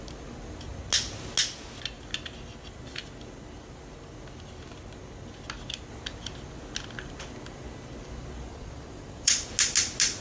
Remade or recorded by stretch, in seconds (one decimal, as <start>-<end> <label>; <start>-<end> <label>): 0.0-8.5 recorded; 8.5-9.5 remade; 9.5-10.2 recorded